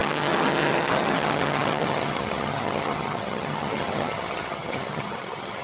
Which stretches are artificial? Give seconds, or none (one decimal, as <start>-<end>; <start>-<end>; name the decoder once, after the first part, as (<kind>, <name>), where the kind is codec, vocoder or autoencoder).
0.0-5.6 (vocoder, HiFi-GAN)